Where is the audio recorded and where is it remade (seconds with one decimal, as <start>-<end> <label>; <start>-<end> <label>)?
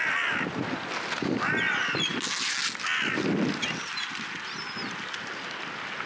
0.0-6.1 recorded